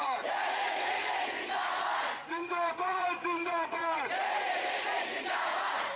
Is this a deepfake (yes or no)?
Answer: yes